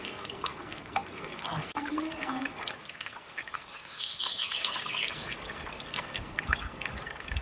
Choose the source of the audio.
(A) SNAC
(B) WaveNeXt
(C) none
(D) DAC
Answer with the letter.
A